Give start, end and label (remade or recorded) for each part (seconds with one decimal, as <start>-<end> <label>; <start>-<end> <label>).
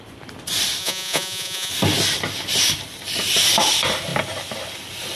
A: 0.0-0.8 recorded; 0.8-1.7 remade; 1.7-5.2 recorded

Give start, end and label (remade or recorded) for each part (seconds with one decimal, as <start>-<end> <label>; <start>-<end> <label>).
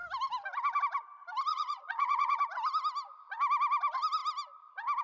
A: 0.0-1.5 recorded; 1.5-2.4 remade; 2.4-5.0 recorded